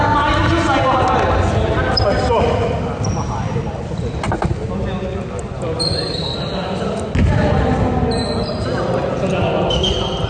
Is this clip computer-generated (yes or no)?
no